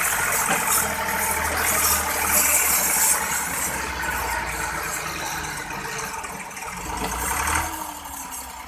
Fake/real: real